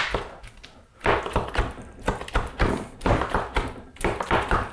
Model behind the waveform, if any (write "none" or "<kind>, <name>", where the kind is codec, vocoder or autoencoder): none